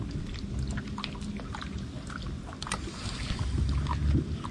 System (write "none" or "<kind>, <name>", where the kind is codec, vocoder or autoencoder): none